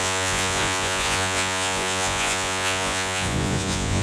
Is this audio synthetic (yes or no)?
yes